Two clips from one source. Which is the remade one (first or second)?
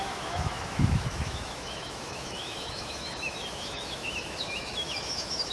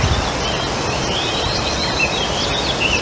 first